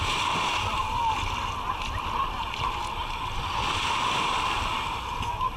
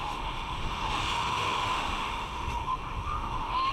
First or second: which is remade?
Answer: second